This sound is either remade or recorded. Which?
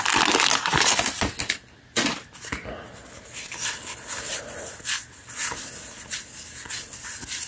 recorded